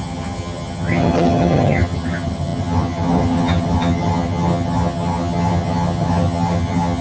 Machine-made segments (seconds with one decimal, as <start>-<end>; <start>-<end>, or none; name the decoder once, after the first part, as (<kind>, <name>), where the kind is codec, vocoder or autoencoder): 0.0-7.0 (vocoder, HiFi-GAN)